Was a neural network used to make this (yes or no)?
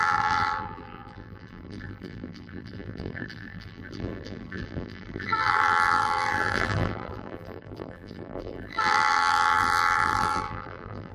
yes